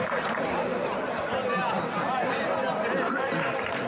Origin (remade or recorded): recorded